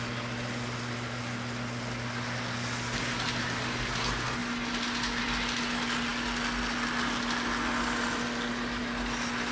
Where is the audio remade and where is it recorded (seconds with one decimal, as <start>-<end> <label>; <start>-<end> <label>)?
0.0-9.5 recorded